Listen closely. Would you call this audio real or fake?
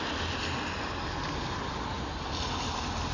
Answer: real